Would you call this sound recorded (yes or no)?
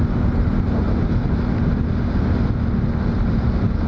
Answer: yes